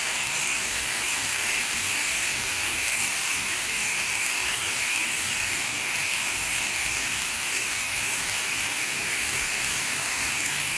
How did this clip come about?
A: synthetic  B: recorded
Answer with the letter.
A